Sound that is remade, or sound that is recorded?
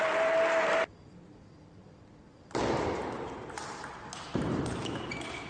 recorded